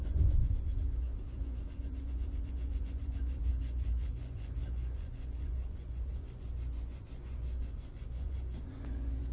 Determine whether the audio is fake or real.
fake